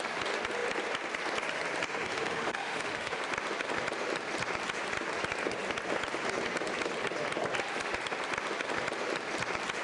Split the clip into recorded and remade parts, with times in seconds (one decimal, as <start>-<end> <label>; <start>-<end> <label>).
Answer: 0.0-1.9 recorded; 1.9-3.2 remade; 3.2-9.8 recorded